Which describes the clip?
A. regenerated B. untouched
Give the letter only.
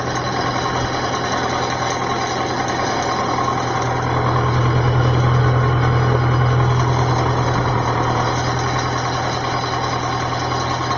B